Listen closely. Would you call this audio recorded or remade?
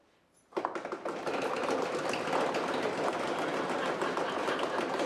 recorded